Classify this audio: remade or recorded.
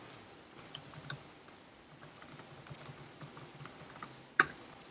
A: recorded